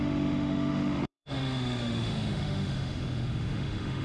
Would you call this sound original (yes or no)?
no